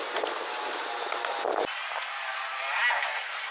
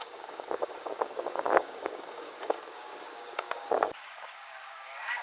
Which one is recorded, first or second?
first